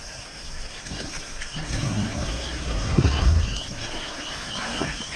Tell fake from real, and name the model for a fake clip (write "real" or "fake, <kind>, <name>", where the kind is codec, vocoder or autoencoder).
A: fake, codec, SNAC